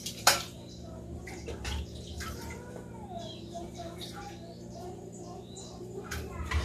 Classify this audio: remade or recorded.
remade